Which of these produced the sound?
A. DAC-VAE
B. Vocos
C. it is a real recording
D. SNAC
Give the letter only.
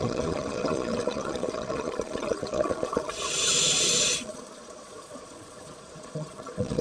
B